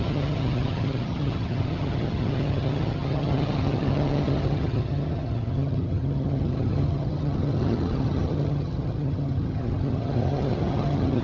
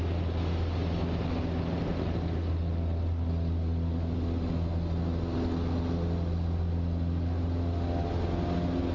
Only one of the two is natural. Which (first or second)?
second